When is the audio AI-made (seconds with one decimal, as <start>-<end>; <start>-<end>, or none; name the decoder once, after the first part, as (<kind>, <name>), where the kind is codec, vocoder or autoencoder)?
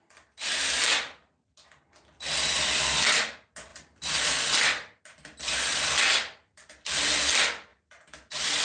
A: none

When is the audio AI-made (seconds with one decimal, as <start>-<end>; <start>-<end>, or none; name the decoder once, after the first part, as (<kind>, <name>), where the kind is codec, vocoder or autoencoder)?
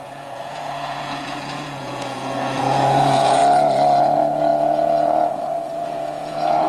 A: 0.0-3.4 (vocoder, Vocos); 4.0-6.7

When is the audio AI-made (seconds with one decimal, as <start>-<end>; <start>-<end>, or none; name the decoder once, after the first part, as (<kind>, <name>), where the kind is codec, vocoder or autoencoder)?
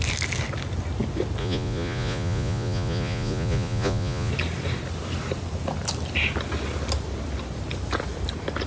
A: 1.4-4.3 (vocoder, Vocos)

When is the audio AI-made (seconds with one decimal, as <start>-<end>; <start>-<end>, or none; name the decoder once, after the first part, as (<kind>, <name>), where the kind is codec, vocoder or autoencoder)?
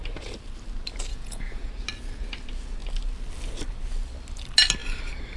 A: 1.1-1.7 (vocoder, Vocos)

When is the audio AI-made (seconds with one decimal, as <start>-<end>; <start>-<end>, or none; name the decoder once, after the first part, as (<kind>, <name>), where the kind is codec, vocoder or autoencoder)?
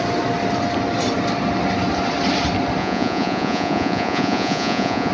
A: 2.8-5.1 (vocoder, Vocos)